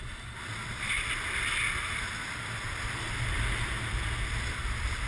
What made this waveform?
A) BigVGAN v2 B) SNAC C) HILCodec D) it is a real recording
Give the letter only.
D